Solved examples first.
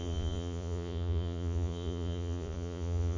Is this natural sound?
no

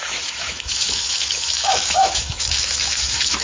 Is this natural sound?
no